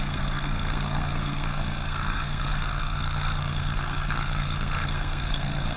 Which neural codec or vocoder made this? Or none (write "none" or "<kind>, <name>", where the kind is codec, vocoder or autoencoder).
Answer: codec, SNAC